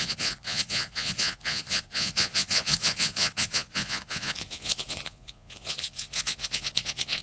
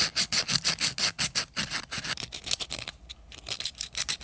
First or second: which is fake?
first